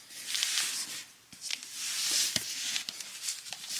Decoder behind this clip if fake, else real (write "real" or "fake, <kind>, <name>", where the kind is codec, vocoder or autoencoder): real